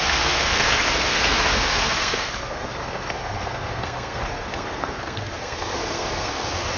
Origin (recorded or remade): remade